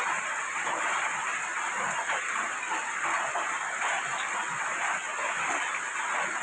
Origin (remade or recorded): recorded